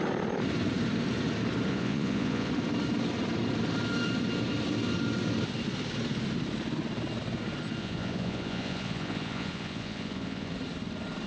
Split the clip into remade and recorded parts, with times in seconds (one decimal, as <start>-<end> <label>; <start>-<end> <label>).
0.0-1.7 recorded; 1.7-2.5 remade; 2.5-7.8 recorded; 7.8-10.5 remade; 10.5-11.3 recorded